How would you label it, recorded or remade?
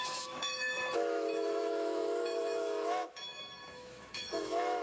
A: remade